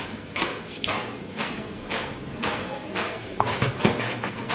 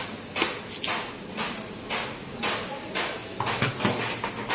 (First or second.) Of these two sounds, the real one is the second